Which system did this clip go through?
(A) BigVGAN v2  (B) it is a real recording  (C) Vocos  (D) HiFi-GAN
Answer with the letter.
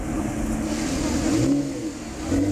B